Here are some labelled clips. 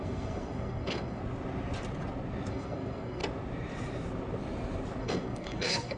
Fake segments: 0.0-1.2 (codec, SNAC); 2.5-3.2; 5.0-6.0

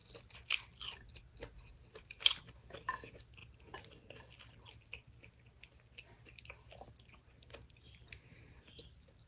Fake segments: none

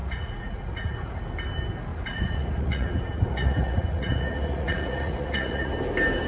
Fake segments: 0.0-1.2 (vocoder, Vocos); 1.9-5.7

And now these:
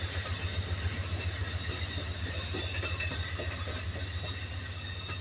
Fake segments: none